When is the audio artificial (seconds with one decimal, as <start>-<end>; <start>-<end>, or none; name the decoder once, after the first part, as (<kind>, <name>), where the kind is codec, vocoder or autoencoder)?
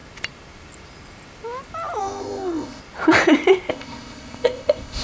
2.0-2.8 (codec, ZipCodec); 3.7-5.0